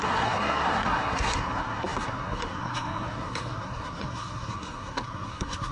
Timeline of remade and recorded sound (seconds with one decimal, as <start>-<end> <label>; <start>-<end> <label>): 0.0-5.7 remade